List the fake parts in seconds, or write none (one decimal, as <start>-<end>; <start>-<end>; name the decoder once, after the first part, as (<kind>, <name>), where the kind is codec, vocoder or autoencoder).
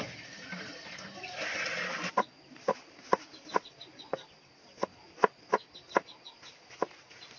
4.9-5.5 (vocoder, BigVGAN v2)